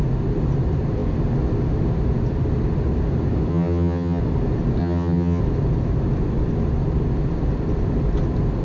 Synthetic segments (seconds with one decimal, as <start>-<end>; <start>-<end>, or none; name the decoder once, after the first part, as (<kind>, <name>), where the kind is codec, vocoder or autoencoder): 3.5-4.2 (vocoder, HiFi-GAN); 4.8-5.4